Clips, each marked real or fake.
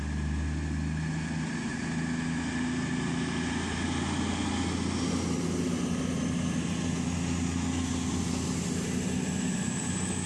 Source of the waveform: real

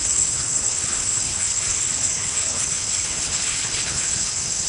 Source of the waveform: fake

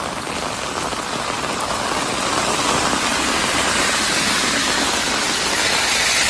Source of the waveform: real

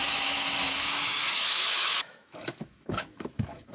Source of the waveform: fake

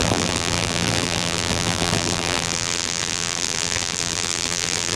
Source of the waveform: fake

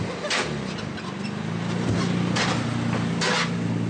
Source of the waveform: real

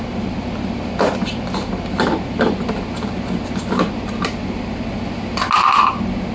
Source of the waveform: fake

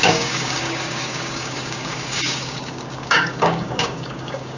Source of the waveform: fake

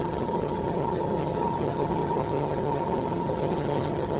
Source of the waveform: fake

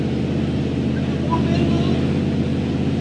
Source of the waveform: real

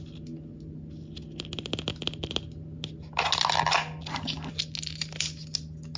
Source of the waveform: real